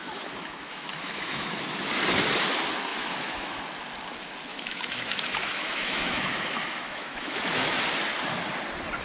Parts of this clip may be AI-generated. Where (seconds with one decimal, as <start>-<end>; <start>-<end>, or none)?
0.0-1.8; 2.9-3.6; 4.5-7.8